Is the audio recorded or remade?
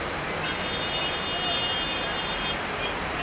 recorded